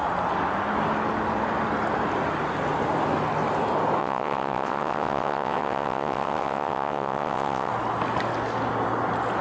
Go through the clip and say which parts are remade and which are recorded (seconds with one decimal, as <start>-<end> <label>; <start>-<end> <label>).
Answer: 0.0-4.0 recorded; 4.0-7.7 remade; 7.7-9.4 recorded